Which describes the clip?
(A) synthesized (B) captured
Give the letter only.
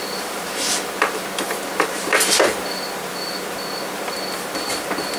A